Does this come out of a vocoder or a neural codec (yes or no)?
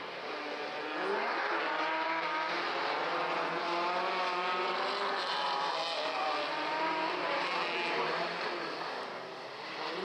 no